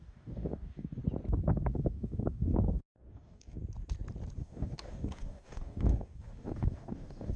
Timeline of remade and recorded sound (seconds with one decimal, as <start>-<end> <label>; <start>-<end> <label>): 0.0-1.0 remade; 1.0-1.5 recorded; 1.5-3.6 remade; 3.6-4.4 recorded; 4.4-7.4 remade